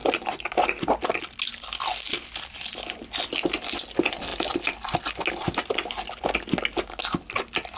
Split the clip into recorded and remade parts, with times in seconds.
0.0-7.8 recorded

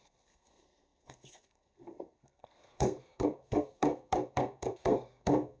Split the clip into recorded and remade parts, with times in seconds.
0.0-5.6 remade

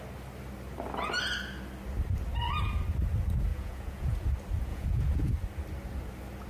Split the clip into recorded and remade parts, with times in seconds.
0.0-3.5 recorded; 3.5-4.3 remade; 4.3-4.7 recorded; 4.7-5.3 remade; 5.3-6.5 recorded

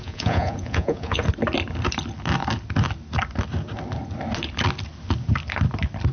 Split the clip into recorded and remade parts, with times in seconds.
0.0-1.2 remade; 1.2-6.1 recorded

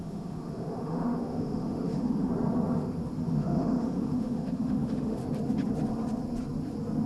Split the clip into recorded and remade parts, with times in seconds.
0.0-2.3 remade; 2.3-3.3 recorded; 3.3-5.2 remade; 5.2-7.1 recorded